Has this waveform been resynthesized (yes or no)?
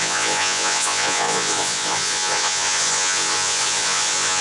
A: yes